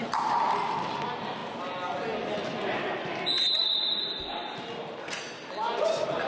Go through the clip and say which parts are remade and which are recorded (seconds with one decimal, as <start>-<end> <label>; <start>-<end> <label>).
0.0-6.3 recorded